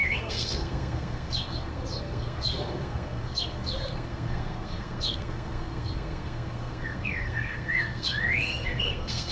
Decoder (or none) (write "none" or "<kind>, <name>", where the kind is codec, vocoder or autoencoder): codec, SNAC